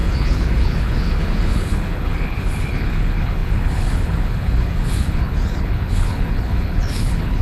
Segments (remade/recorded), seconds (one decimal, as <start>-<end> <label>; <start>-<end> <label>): 0.0-7.4 remade